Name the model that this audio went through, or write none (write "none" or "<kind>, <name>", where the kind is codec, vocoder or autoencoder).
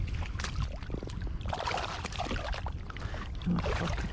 none